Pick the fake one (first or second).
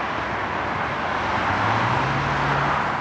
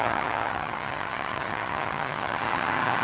second